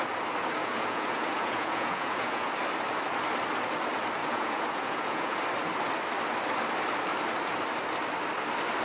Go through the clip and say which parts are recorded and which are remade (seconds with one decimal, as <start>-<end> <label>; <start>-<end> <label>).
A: 0.0-0.6 recorded; 0.6-2.5 remade; 2.5-4.2 recorded; 4.2-5.4 remade; 5.4-8.8 recorded